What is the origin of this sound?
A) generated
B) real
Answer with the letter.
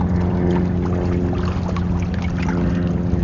B